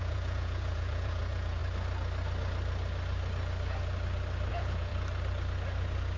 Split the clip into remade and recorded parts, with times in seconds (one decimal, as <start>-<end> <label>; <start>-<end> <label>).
0.0-1.6 remade; 1.6-4.5 recorded; 4.5-4.9 remade; 4.9-6.2 recorded